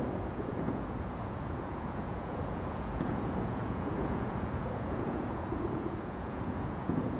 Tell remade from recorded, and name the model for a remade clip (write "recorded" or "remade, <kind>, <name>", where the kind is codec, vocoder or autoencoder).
remade, vocoder, Vocos